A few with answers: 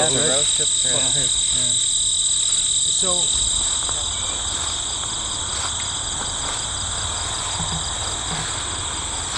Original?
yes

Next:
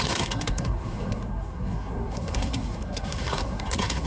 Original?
no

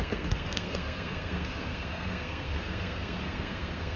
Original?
no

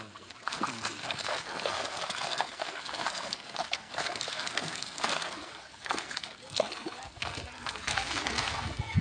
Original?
no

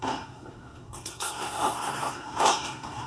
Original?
no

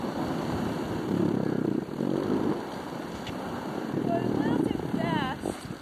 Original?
yes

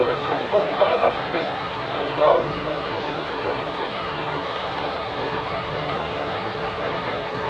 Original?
no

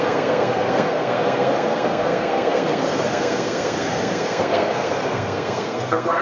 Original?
no